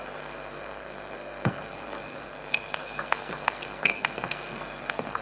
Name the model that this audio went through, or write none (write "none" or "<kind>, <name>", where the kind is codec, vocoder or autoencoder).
codec, SNAC